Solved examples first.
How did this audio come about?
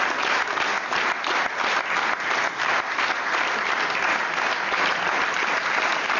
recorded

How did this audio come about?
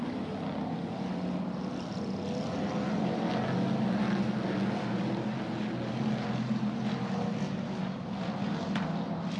recorded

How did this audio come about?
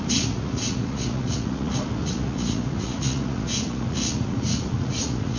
remade